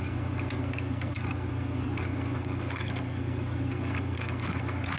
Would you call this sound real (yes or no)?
no